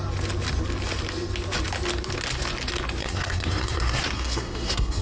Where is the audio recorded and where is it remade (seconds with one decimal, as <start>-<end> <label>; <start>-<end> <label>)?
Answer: 0.0-3.0 recorded; 3.0-5.0 remade